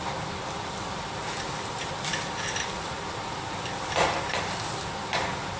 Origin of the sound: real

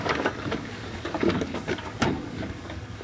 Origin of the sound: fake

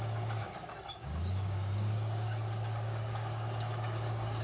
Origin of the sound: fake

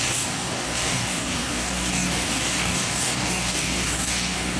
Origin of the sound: fake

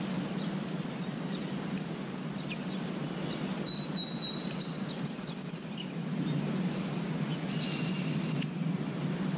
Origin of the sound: real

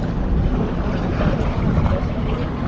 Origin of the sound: real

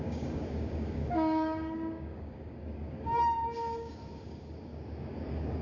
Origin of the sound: fake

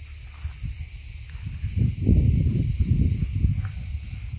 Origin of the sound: real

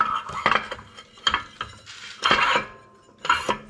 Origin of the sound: real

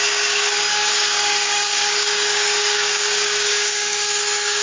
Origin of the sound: fake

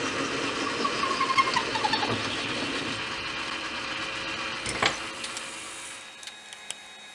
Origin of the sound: real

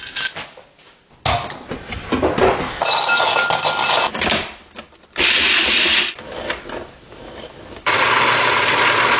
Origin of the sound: real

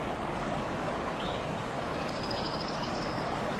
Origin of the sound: fake